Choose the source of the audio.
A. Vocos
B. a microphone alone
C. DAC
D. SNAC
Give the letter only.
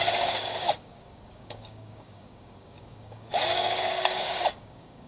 C